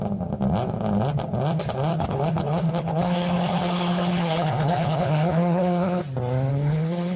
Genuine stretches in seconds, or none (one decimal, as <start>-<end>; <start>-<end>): 0.0-1.9; 6.0-6.5